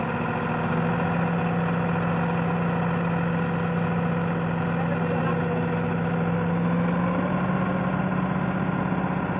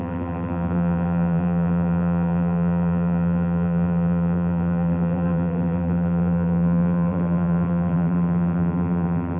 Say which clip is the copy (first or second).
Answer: second